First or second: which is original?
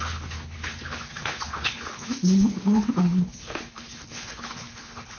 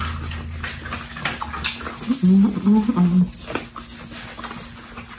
second